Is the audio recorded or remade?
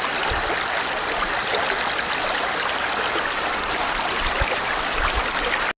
recorded